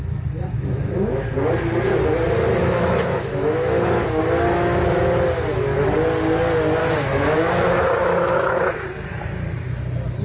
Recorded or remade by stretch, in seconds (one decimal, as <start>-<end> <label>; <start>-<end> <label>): 0.0-1.3 remade; 1.3-2.5 recorded; 2.5-4.2 remade; 4.2-6.8 recorded; 6.8-8.6 remade; 8.6-10.2 recorded

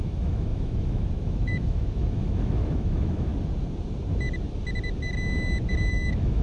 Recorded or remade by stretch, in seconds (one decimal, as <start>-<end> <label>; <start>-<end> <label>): 0.0-3.3 remade; 3.3-5.9 recorded; 5.9-6.4 remade

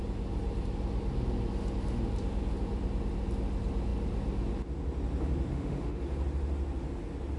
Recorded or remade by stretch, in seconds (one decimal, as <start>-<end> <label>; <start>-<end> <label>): 0.0-5.5 recorded; 5.5-6.0 remade; 6.0-7.4 recorded